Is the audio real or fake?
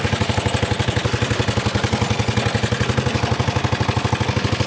real